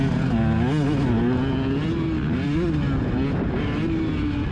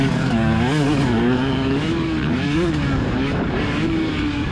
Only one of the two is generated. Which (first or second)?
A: second